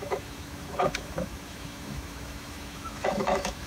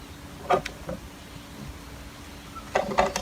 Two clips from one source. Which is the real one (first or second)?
second